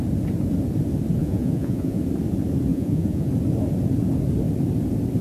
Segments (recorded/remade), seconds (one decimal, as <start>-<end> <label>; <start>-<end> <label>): 0.0-1.2 recorded; 1.2-2.0 remade; 2.0-2.7 recorded; 2.7-3.3 remade; 3.3-5.2 recorded